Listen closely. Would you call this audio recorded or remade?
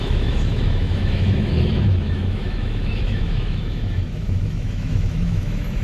remade